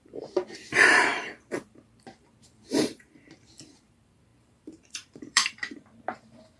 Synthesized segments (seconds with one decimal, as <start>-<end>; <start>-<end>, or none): 0.0-6.6